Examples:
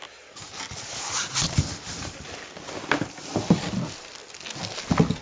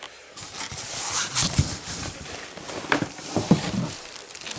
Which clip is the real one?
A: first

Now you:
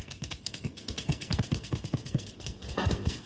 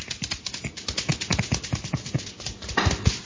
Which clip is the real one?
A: second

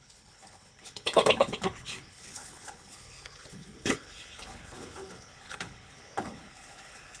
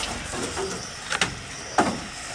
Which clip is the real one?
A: second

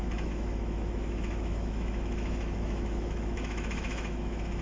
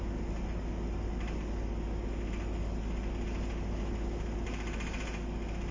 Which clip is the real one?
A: second